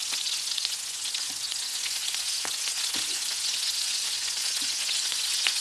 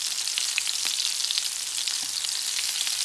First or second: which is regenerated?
first